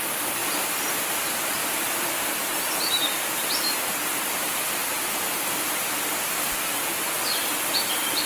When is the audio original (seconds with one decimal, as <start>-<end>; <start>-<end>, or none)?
0.4-1.2; 1.6-4.3; 7.4-7.9